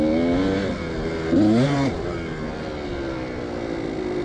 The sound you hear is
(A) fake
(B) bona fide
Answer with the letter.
B